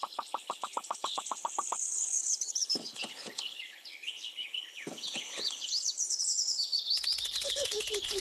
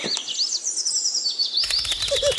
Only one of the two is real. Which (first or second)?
second